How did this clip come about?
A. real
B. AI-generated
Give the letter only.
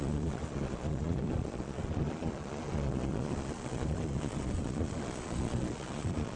B